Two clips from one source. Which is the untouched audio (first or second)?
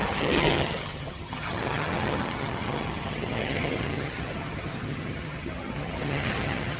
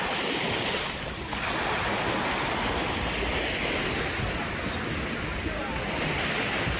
second